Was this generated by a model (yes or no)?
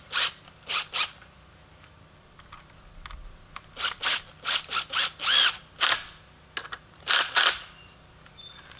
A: no